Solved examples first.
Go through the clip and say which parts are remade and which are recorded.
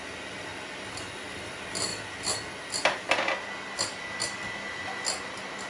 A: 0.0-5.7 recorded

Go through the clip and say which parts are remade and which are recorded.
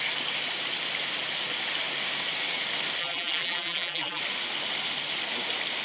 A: 0.0-3.0 recorded; 3.0-4.2 remade; 4.2-5.8 recorded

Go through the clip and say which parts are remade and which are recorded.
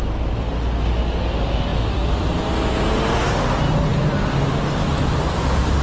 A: 0.0-5.8 recorded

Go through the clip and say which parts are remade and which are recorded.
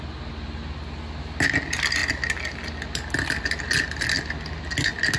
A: 0.0-5.2 recorded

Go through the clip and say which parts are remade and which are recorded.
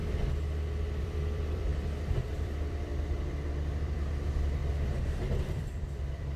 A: 0.0-1.0 recorded; 1.0-1.7 remade; 1.7-2.3 recorded; 2.3-2.9 remade; 2.9-3.7 recorded; 3.7-4.6 remade; 4.6-5.4 recorded; 5.4-6.4 remade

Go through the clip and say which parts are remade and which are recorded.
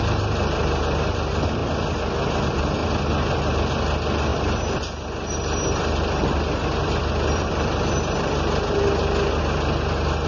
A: 0.0-4.3 recorded; 4.3-9.4 remade; 9.4-10.3 recorded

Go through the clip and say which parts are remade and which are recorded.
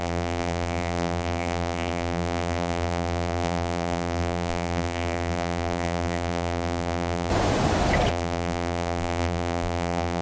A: 0.0-7.3 remade; 7.3-8.1 recorded; 8.1-10.2 remade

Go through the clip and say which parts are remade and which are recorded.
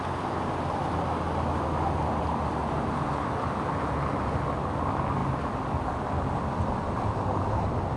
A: 0.0-2.6 recorded; 2.6-3.3 remade; 3.3-8.0 recorded